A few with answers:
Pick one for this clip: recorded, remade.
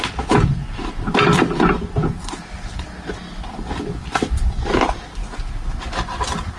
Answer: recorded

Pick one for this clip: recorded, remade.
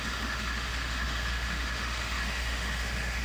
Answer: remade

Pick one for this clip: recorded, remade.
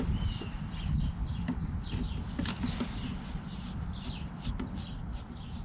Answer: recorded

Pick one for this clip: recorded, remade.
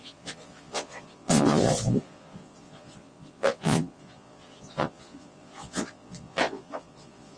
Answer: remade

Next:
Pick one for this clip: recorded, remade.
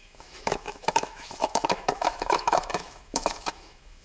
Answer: remade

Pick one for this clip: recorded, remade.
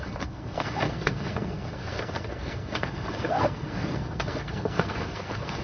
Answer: remade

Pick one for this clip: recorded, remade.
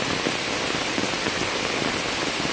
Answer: recorded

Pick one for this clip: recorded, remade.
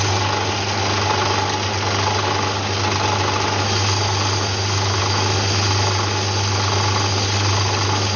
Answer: recorded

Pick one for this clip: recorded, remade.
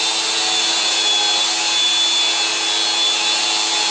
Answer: recorded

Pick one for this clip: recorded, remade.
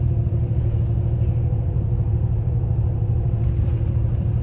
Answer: remade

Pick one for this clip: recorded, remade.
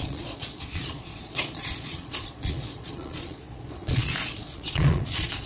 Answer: remade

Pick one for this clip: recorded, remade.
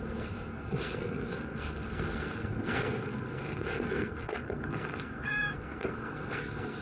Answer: remade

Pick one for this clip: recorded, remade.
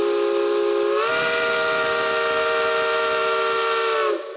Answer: recorded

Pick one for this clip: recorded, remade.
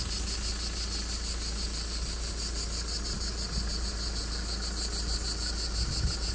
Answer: recorded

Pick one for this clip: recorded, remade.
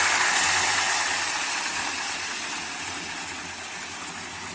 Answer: recorded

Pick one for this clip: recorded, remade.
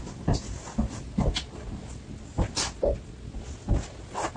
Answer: recorded